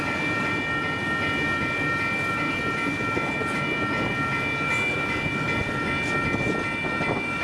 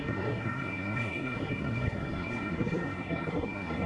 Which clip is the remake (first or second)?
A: second